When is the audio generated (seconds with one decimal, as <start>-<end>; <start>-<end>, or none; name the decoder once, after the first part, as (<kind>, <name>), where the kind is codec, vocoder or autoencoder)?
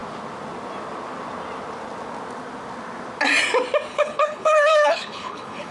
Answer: 3.9-5.7 (codec, HILCodec)